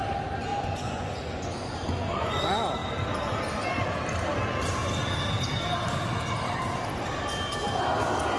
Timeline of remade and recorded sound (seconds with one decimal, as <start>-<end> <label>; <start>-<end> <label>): 0.0-0.5 recorded; 0.5-2.4 remade; 2.4-8.4 recorded